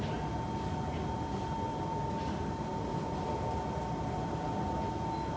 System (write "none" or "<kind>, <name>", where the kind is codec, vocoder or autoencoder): none